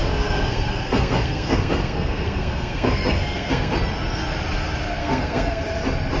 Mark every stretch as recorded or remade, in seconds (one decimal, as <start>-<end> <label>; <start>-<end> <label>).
0.0-3.7 remade; 3.7-5.0 recorded; 5.0-5.6 remade; 5.6-6.2 recorded